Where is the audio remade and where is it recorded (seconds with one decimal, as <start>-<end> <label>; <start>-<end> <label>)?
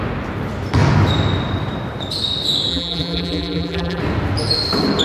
0.0-2.7 recorded; 2.7-4.0 remade; 4.0-5.0 recorded